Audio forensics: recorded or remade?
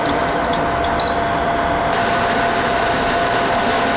recorded